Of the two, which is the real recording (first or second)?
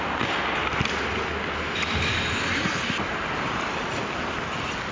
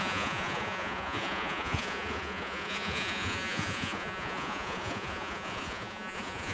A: first